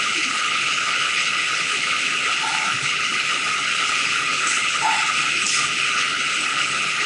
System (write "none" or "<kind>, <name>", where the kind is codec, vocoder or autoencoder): codec, HILCodec